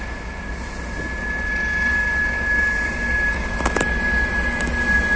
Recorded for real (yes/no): yes